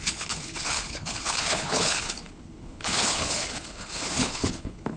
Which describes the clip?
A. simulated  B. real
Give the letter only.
A